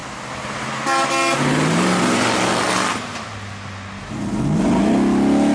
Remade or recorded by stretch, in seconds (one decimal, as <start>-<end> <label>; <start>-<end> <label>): 0.0-5.5 recorded